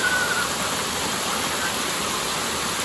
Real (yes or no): yes